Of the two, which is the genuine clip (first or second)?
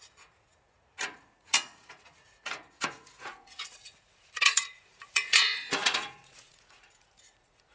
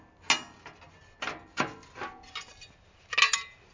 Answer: second